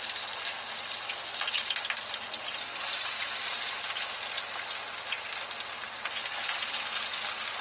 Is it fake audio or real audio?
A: real